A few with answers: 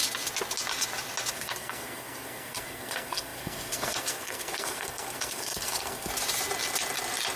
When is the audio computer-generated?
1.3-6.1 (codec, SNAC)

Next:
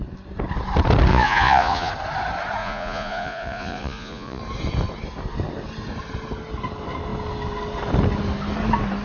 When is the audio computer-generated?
1.1-1.9 (vocoder, Vocos); 2.6-4.4

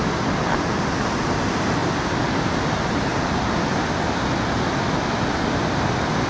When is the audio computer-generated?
none

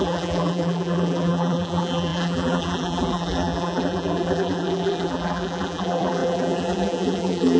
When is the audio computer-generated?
0.0-7.6 (vocoder, BigVGAN v2)

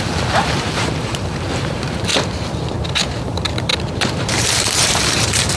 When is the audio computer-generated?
0.0-2.1 (vocoder, BigVGAN v2); 3.2-3.7; 4.3-5.6

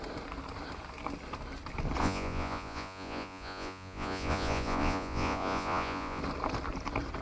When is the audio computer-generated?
2.0-6.2 (vocoder, Vocos)